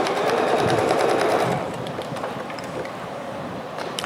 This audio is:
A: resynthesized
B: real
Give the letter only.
A